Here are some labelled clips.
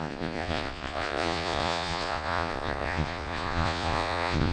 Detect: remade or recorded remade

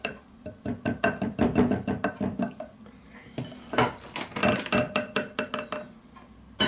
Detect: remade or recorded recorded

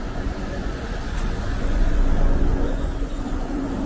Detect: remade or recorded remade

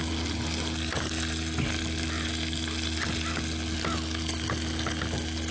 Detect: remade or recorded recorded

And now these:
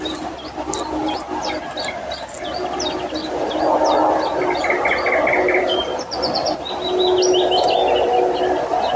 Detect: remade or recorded recorded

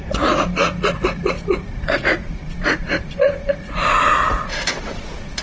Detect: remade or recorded remade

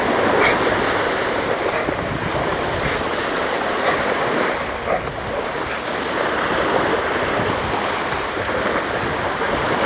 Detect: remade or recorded recorded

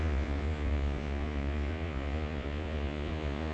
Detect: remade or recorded remade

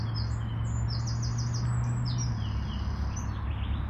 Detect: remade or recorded recorded